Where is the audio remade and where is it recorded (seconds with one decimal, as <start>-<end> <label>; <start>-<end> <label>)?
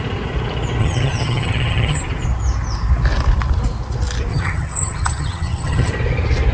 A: 0.0-0.8 recorded; 0.8-2.0 remade; 2.0-4.3 recorded; 4.3-5.9 remade; 5.9-6.5 recorded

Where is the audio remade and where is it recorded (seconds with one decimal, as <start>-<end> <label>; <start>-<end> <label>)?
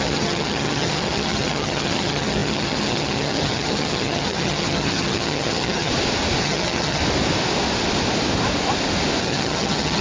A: 0.0-5.9 remade; 5.9-6.4 recorded; 6.4-7.0 remade; 7.0-9.2 recorded; 9.2-10.0 remade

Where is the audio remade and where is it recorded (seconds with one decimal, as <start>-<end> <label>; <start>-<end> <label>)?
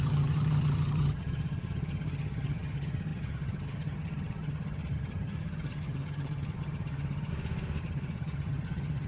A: 0.0-7.3 remade; 7.3-7.8 recorded; 7.8-9.1 remade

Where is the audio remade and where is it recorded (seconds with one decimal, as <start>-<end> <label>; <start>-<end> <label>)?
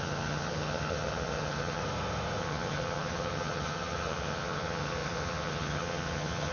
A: 0.0-1.8 remade; 1.8-2.4 recorded; 2.4-6.5 remade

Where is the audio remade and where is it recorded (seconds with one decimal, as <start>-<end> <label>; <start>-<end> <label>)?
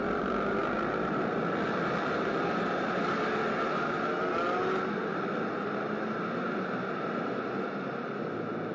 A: 0.0-8.7 recorded